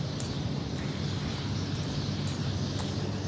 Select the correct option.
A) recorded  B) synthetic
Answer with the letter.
B